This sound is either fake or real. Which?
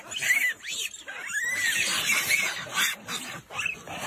real